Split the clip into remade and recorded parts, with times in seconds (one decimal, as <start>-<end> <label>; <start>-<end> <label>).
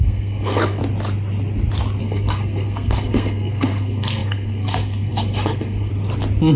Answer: 0.0-0.8 remade; 0.8-2.0 recorded; 2.0-5.9 remade; 5.9-6.6 recorded